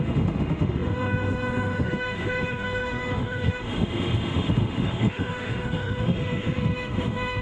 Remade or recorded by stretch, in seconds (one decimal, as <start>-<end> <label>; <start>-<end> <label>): 0.0-7.4 remade